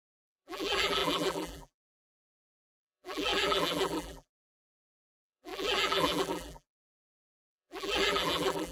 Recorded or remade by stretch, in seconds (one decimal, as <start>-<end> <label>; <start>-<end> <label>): 0.0-8.7 remade